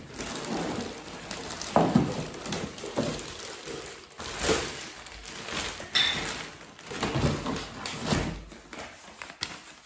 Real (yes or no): yes